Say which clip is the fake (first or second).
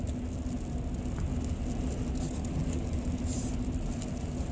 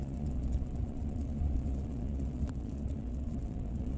second